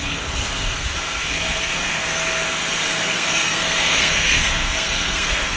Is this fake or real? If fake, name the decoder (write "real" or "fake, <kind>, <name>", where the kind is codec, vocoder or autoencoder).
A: fake, codec, SNAC